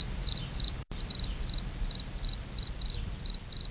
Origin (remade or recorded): recorded